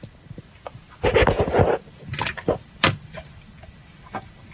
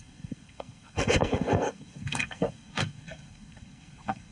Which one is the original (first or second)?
first